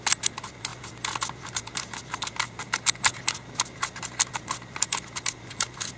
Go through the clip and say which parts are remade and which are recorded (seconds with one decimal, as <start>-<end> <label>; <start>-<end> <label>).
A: 0.0-6.0 recorded